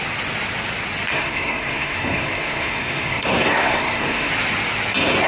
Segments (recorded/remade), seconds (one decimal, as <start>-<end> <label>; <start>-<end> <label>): 0.0-1.1 recorded; 1.1-4.3 remade; 4.3-5.3 recorded